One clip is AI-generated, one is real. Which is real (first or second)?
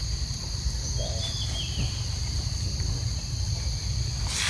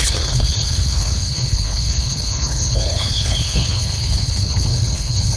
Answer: first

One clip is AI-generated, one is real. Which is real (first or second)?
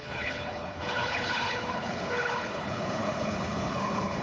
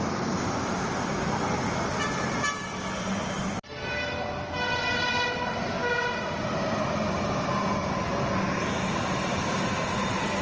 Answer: second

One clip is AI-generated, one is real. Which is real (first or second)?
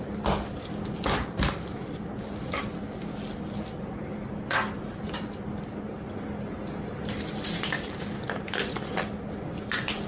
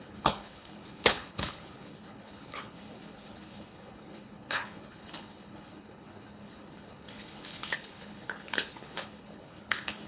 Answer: first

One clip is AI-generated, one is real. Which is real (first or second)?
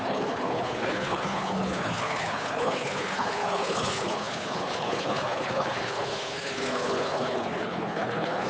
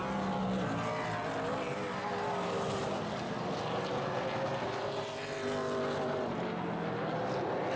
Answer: second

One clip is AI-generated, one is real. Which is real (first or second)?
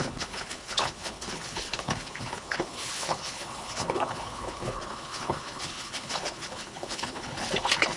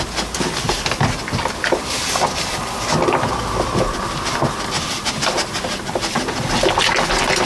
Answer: second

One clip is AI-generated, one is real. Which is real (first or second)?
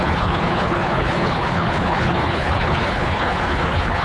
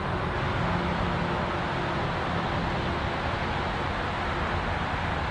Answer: second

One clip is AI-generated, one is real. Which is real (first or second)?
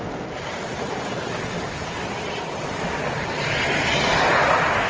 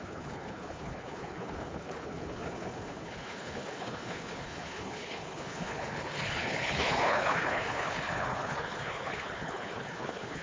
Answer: first